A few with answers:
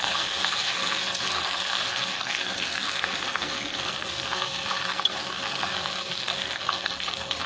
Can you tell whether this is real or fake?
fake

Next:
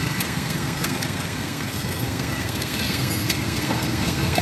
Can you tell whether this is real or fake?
fake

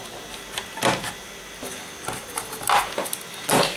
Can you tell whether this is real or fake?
real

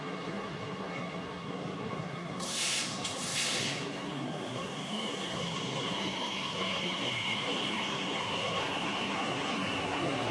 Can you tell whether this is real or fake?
fake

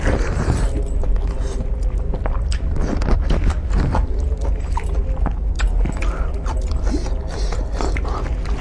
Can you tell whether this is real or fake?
real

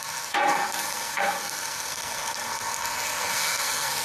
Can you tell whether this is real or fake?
fake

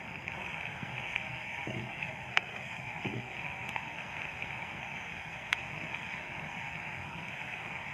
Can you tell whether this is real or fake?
fake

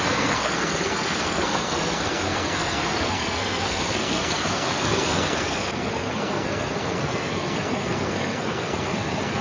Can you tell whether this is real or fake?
fake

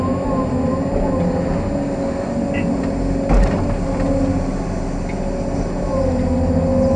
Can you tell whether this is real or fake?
real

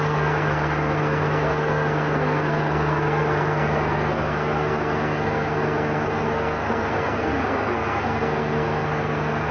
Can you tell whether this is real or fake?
fake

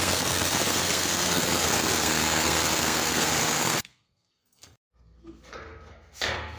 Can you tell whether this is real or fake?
fake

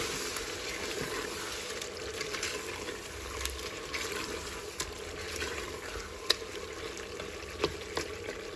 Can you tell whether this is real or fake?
real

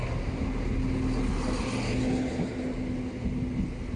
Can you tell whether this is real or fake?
real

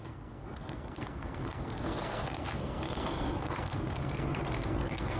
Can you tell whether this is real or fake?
fake